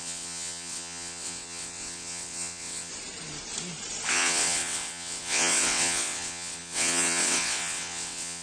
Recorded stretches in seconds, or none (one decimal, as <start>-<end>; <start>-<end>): 2.9-4.1